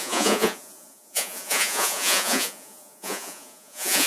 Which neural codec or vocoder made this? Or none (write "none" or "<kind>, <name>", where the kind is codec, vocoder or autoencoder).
vocoder, Vocos